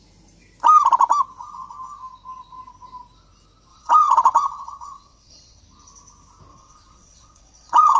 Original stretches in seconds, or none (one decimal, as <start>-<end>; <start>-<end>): 0.0-3.7; 5.6-6.5